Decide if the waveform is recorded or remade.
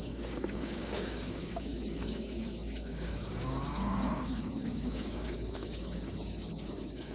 remade